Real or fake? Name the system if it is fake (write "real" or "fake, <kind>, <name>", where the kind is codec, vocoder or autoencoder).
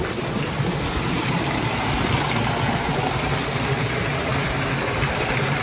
real